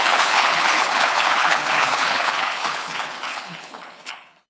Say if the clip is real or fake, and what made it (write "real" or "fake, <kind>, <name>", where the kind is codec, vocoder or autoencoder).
fake, codec, HILCodec